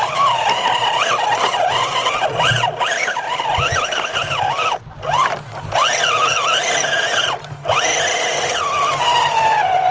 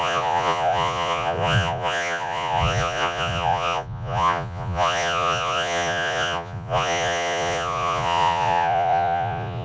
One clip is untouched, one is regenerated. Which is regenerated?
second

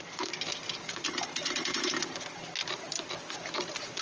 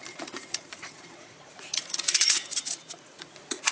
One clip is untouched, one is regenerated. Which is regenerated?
second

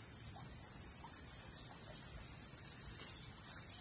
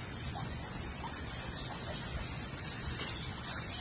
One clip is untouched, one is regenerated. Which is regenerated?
second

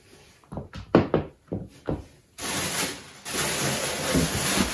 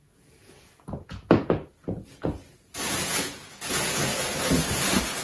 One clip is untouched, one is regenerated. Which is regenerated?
second